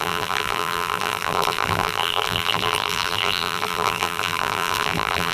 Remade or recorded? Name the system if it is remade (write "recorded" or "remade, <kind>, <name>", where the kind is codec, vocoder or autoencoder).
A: remade, vocoder, BigVGAN v2